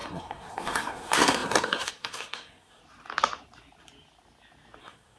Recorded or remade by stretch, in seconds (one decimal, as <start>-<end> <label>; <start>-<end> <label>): 0.0-2.8 remade; 2.8-4.8 recorded; 4.8-5.2 remade